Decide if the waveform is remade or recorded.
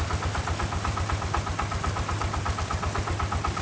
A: recorded